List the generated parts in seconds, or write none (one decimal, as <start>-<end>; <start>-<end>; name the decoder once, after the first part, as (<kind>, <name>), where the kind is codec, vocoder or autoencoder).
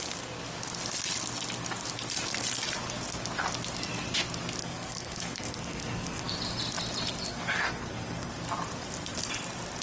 4.6-6.3 (codec, SNAC); 7.3-8.3